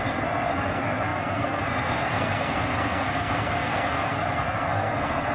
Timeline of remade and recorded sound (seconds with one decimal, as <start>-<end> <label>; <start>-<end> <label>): 0.0-5.3 remade